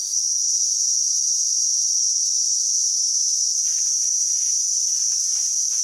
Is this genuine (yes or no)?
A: yes